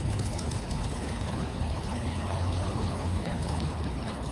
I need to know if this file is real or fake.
fake